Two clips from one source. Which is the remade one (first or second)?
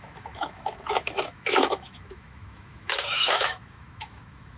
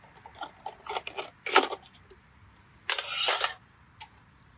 first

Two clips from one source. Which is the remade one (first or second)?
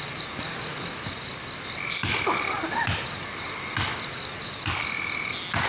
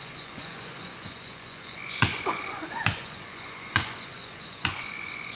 second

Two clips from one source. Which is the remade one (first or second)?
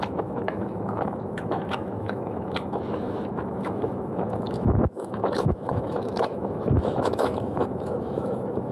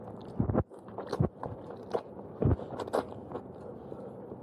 first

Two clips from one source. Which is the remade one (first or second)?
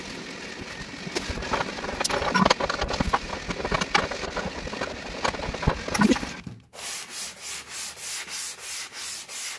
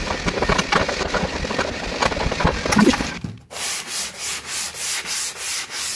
second